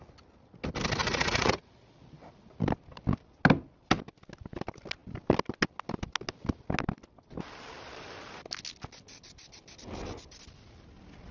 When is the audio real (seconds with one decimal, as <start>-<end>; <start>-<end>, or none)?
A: 0.0-1.0; 1.7-11.3